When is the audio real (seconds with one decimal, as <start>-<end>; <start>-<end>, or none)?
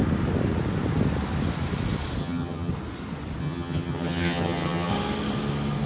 0.0-2.2; 2.7-3.4; 4.9-5.9